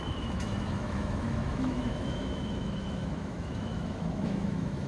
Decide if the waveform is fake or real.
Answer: fake